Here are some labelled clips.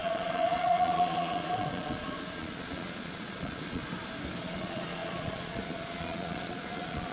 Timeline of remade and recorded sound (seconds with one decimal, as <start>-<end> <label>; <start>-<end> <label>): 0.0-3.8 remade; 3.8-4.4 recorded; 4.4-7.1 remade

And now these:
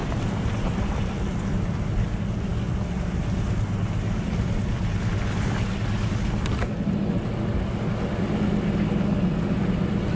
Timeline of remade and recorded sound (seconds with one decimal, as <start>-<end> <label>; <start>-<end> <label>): 0.0-0.9 remade; 0.9-10.2 recorded

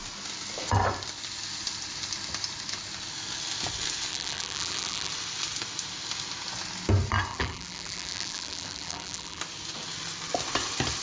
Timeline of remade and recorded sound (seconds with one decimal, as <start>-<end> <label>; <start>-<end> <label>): 0.0-4.1 recorded; 4.1-5.1 remade; 5.1-7.3 recorded; 7.3-9.4 remade; 9.4-11.0 recorded